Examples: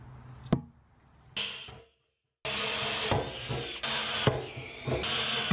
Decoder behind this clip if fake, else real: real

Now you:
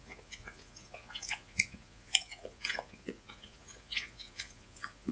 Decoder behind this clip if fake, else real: fake, vocoder, Vocos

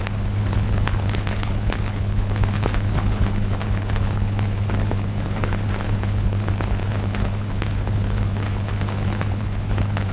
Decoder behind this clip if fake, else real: fake, codec, HILCodec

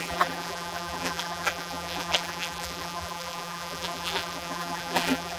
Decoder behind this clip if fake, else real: fake, vocoder, BigVGAN v2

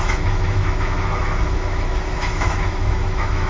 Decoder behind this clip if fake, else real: fake, autoencoder, DAC-VAE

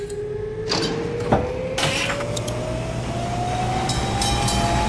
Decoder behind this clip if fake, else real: real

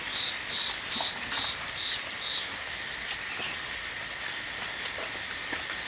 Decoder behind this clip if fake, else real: real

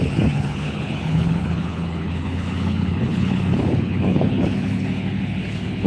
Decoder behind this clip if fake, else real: fake, codec, HILCodec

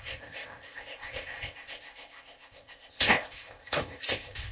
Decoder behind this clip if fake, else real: fake, codec, ZipCodec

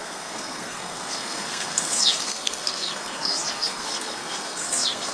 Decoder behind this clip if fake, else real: fake, codec, SNAC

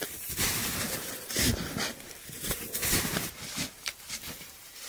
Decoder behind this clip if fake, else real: fake, vocoder, BigVGAN v2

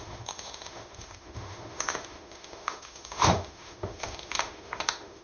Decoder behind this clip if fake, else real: fake, autoencoder, DAC-VAE